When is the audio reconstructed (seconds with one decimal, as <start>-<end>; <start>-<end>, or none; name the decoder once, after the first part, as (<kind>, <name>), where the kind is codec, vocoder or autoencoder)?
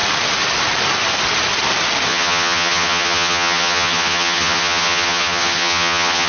2.1-6.3 (vocoder, HiFi-GAN)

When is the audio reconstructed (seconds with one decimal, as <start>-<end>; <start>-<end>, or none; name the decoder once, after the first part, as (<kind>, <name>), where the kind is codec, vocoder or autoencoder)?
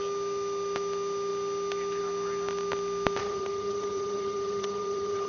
3.2-5.3 (vocoder, HiFi-GAN)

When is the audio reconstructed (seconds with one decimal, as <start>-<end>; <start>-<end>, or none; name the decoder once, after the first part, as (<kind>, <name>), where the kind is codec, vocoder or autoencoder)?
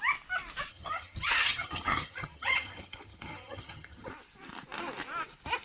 0.7-4.1 (vocoder, HiFi-GAN)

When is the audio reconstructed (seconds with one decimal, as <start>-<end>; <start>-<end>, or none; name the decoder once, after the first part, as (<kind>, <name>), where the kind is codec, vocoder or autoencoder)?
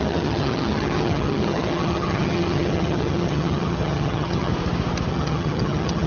0.0-4.5 (vocoder, HiFi-GAN); 5.1-6.1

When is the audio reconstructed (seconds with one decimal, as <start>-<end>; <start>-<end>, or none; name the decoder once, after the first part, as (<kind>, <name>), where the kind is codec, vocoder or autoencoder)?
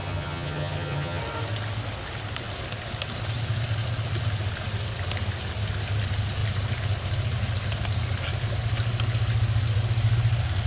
0.0-1.2 (vocoder, HiFi-GAN)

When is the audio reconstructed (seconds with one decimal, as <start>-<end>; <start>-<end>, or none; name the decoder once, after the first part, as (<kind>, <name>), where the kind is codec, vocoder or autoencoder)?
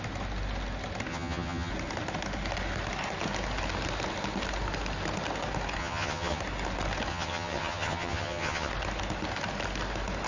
1.1-1.7 (vocoder, HiFi-GAN); 5.8-6.4; 7.1-8.7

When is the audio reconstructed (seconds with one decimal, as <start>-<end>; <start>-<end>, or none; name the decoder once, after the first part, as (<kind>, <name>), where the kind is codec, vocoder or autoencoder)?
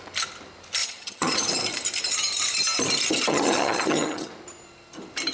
0.8-1.5 (vocoder, HiFi-GAN); 3.3-4.3